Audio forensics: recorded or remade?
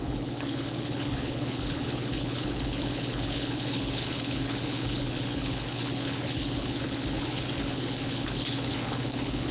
remade